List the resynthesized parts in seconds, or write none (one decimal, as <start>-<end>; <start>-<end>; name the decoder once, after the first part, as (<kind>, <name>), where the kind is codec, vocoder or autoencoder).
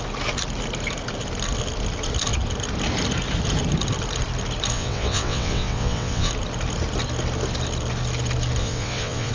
4.7-6.3 (vocoder, WaveNeXt); 8.6-9.3